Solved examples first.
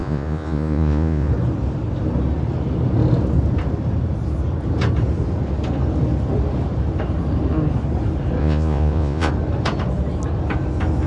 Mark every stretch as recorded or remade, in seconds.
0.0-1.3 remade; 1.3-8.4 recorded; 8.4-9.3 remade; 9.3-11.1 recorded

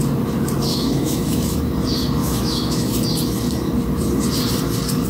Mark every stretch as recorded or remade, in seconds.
0.0-0.7 recorded; 0.7-1.6 remade; 1.6-2.2 recorded; 2.2-2.9 remade; 2.9-5.1 recorded

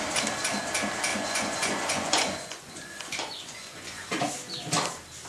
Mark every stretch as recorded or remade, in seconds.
0.0-1.1 recorded; 1.1-4.3 remade; 4.3-5.3 recorded

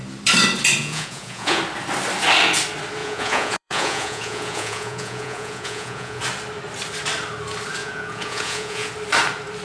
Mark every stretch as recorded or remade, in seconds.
0.0-0.8 recorded; 0.8-1.6 remade; 1.6-3.0 recorded; 3.0-6.2 remade; 6.2-7.8 recorded; 7.8-8.9 remade; 8.9-9.6 recorded

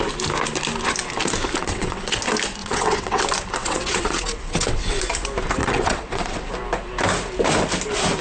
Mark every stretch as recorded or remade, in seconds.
0.0-1.6 recorded; 1.6-2.2 remade; 2.2-2.6 recorded; 2.6-3.2 remade; 3.2-3.6 recorded; 3.6-5.0 remade; 5.0-5.6 recorded; 5.6-6.5 remade; 6.5-8.2 recorded

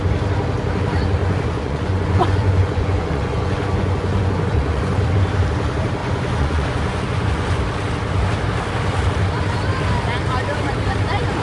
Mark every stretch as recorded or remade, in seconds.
0.0-1.2 recorded; 1.2-5.1 remade; 5.1-6.0 recorded; 6.0-7.6 remade; 7.6-11.4 recorded

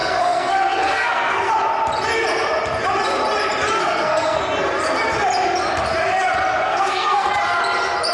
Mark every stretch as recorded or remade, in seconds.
0.0-1.5 remade; 1.5-3.8 recorded; 3.8-4.4 remade; 4.4-6.7 recorded; 6.7-7.3 remade; 7.3-8.1 recorded